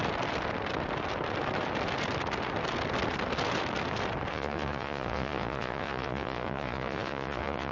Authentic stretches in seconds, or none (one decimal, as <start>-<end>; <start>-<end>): 0.0-4.3